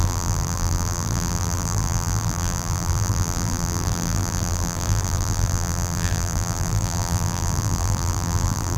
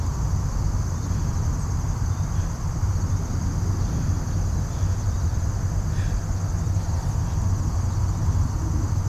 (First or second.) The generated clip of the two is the first